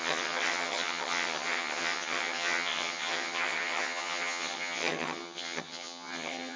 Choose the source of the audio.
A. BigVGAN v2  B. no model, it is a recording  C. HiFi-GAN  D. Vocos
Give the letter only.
C